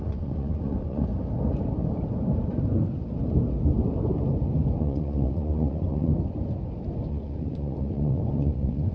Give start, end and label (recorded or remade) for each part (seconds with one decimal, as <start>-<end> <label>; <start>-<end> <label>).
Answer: 0.0-1.1 remade; 1.1-4.8 recorded; 4.8-6.1 remade; 6.1-7.1 recorded; 7.1-8.9 remade